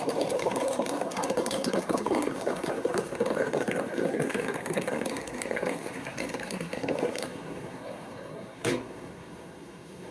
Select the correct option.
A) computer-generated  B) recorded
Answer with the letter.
A